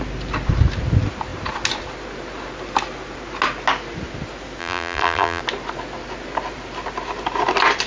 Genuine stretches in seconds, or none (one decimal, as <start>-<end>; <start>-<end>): 0.0-4.6; 5.4-7.9